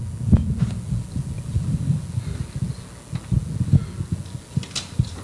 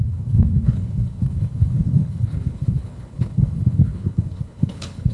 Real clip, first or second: first